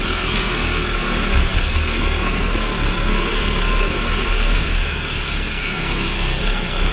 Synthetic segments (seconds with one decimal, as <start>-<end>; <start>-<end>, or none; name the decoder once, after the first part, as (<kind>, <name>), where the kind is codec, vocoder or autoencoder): 0.0-6.9 (codec, SNAC)